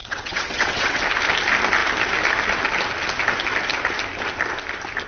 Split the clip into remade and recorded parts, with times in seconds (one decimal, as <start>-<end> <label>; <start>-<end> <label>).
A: 0.0-1.0 remade; 1.0-5.1 recorded